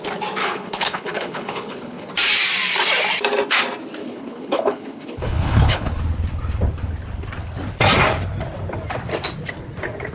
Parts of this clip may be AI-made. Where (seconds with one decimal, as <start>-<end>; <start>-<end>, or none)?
0.4-2.1; 4.0-6.0